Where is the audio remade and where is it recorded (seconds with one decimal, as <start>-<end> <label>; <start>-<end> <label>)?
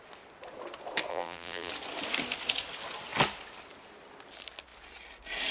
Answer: 0.0-1.1 recorded; 1.1-1.7 remade; 1.7-5.5 recorded